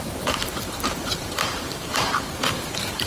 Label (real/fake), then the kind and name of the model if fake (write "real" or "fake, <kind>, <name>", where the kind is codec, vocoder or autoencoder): fake, vocoder, BigVGAN v2